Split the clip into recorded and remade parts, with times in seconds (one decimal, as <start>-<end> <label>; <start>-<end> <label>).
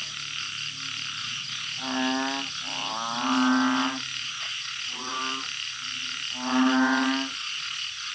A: 0.0-1.2 recorded; 1.2-1.8 remade; 1.8-4.2 recorded; 4.2-5.2 remade; 5.2-7.4 recorded; 7.4-8.1 remade